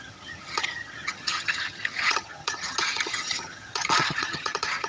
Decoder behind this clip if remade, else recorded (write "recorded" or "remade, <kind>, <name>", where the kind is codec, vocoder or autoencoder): remade, vocoder, HiFi-GAN